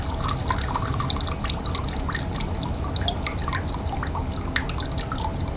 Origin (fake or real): real